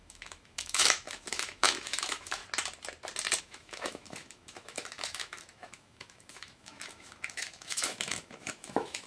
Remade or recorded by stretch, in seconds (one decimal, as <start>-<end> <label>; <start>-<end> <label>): 0.0-2.4 remade; 2.4-3.4 recorded; 3.4-9.1 remade